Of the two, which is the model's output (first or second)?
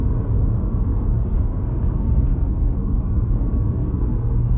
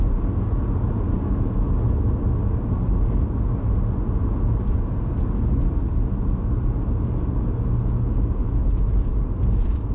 first